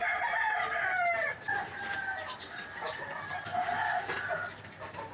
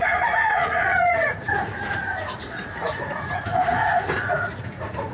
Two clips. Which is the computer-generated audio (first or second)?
second